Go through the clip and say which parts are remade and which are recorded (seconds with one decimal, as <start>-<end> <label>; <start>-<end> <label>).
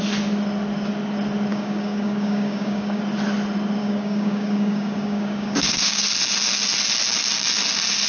0.0-1.5 recorded; 1.5-3.0 remade; 3.0-3.8 recorded; 3.8-6.0 remade; 6.0-8.1 recorded